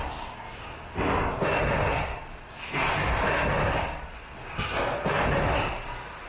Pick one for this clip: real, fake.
real